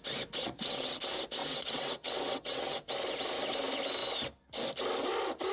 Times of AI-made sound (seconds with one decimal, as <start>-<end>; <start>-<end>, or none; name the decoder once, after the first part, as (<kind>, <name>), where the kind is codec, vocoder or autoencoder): 0.4-1.0 (vocoder, WaveNeXt); 1.4-2.9